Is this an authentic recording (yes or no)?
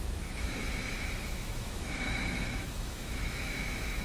no